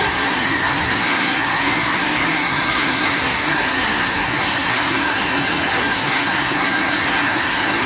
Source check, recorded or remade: remade